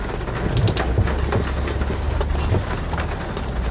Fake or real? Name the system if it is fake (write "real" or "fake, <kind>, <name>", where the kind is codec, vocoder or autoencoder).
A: real